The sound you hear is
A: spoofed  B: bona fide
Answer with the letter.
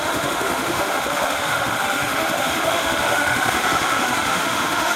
A